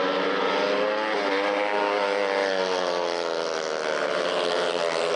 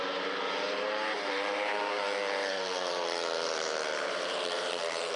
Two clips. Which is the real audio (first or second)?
first